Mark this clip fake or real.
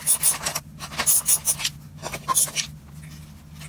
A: real